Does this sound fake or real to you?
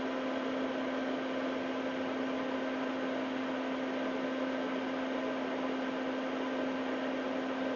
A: real